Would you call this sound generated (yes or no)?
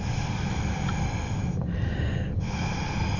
no